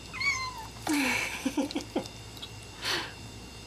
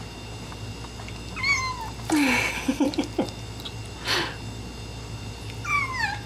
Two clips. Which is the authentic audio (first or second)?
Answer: second